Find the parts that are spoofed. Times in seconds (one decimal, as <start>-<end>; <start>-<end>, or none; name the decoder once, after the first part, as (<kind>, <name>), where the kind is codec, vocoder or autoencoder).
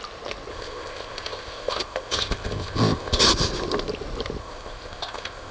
0.5-3.2 (codec, ZipCodec); 4.4-5.5